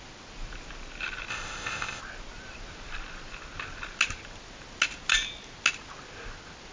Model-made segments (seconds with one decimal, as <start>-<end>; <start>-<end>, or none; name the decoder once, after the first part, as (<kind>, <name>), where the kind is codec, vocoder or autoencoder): 1.3-2.0 (codec, ZipCodec)